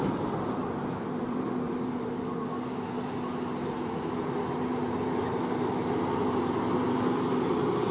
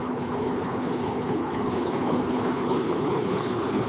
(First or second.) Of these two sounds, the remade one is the second